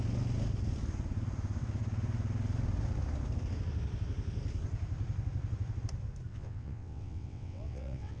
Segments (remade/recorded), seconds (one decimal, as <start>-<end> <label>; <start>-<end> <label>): 0.0-6.3 recorded; 6.3-8.2 remade